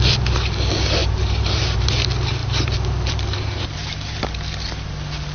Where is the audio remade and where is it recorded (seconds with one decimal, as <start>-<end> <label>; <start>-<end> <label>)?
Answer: 0.0-1.0 recorded; 1.0-1.9 remade; 1.9-2.4 recorded; 2.4-4.2 remade; 4.2-5.3 recorded